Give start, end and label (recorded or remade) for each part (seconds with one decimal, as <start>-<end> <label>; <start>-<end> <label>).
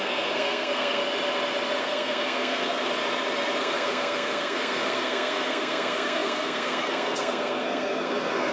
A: 0.0-1.0 remade; 1.0-1.8 recorded; 1.8-2.9 remade; 2.9-3.6 recorded; 3.6-8.5 remade